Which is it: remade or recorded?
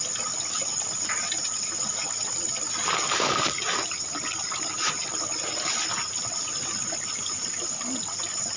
recorded